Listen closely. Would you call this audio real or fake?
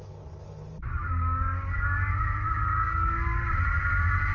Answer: real